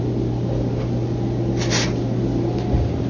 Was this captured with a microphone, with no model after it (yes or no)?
yes